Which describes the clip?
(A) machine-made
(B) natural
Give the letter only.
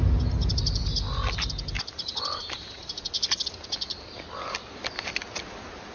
B